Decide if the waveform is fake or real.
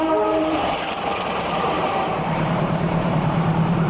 fake